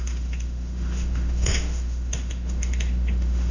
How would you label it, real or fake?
fake